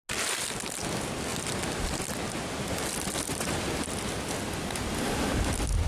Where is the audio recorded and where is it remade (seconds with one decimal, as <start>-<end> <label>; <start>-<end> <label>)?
0.0-5.9 recorded